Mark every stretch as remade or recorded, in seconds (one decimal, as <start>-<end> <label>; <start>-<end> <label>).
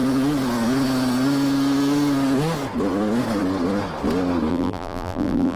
0.0-4.5 recorded; 4.5-5.6 remade